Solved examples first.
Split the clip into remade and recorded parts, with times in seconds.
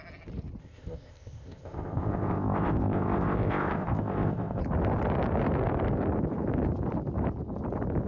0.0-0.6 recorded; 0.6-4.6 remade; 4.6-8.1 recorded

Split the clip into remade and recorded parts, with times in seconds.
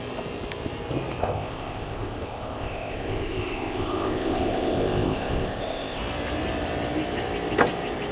0.0-1.2 recorded; 1.2-6.0 remade; 6.0-8.1 recorded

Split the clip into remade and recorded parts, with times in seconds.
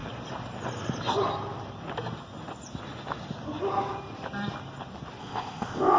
0.0-5.2 recorded; 5.2-6.0 remade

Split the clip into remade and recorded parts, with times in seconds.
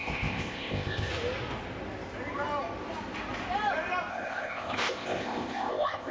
0.0-1.1 remade; 1.1-4.1 recorded; 4.1-6.1 remade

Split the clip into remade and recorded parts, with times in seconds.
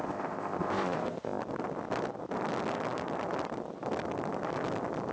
0.0-1.4 remade; 1.4-5.1 recorded